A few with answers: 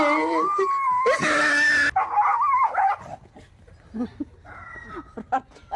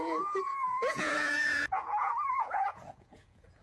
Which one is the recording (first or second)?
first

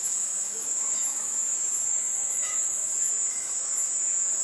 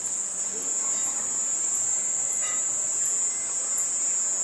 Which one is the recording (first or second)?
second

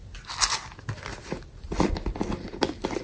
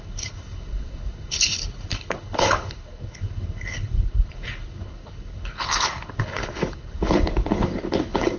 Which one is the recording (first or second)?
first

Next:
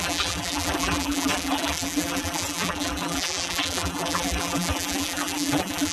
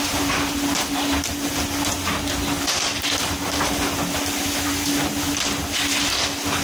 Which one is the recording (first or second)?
second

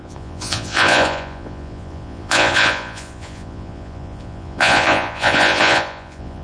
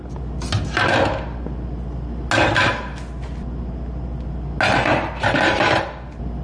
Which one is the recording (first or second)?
second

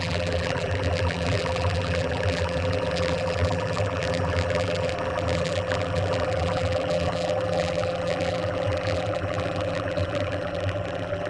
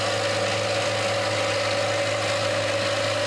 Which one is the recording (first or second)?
second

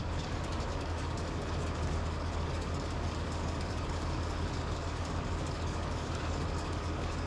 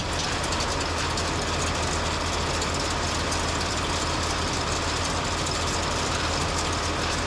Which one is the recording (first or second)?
second